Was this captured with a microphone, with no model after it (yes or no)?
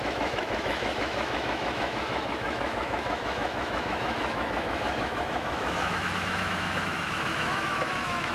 no